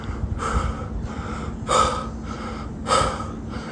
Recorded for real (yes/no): yes